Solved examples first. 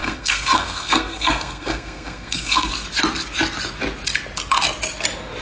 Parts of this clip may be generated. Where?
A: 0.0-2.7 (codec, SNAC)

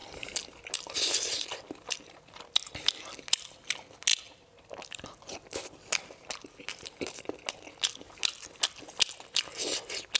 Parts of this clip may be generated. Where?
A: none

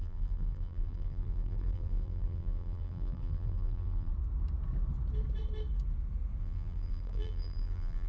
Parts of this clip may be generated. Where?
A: 0.0-4.1 (vocoder, BigVGAN v2); 6.4-8.1

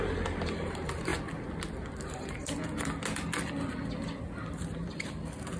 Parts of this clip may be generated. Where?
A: 0.0-1.1 (vocoder, BigVGAN v2); 4.5-5.6

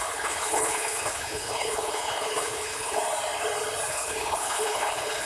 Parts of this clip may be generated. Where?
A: 0.0-3.0 (codec, HILCodec); 3.9-5.3

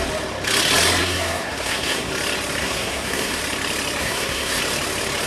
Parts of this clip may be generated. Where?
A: 1.0-2.1 (codec, SNAC); 2.6-3.4; 4.0-4.6